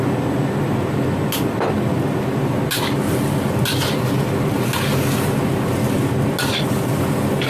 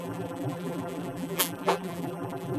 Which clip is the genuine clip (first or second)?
first